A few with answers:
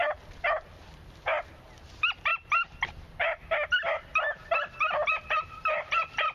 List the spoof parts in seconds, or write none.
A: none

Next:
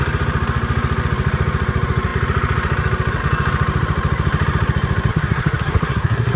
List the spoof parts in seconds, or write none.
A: 5.1-6.4 (codec, SNAC)

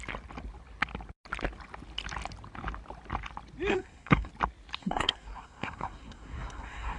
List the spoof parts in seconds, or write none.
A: 3.7-4.3 (codec, SNAC); 4.8-7.0

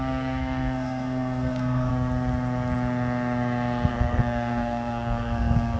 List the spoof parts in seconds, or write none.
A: 0.0-1.9 (codec, SNAC); 3.9-5.8

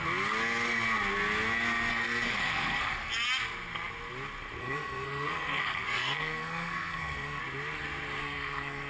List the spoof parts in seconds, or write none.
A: 1.9-3.1 (codec, SNAC); 4.6-7.4; 8.2-8.9

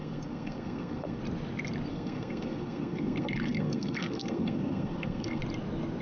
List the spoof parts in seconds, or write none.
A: 0.0-1.2 (codec, SNAC); 1.9-5.4